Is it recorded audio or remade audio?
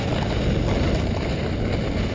recorded